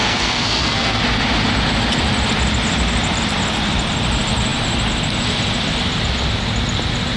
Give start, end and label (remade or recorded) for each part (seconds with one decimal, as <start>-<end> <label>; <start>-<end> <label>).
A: 0.0-1.0 remade; 1.0-7.2 recorded